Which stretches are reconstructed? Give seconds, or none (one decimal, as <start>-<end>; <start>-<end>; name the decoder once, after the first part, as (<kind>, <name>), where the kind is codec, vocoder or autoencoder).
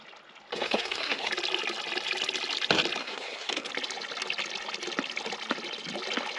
0.5-1.3 (codec, SNAC); 3.0-3.7